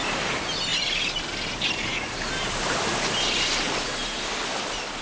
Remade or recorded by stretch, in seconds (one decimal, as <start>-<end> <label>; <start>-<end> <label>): 0.0-5.0 recorded